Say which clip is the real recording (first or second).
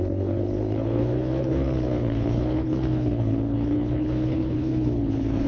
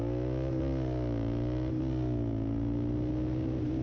second